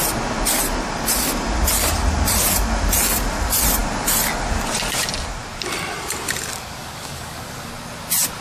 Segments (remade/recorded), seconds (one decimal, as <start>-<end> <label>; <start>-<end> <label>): 0.0-6.5 recorded; 6.5-7.7 remade; 7.7-8.4 recorded